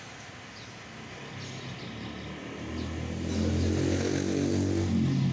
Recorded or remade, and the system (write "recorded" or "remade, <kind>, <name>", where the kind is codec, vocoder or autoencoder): recorded